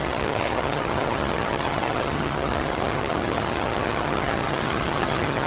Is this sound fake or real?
fake